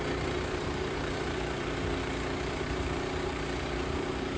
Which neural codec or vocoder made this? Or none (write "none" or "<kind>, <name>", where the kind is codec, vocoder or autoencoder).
vocoder, BigVGAN v2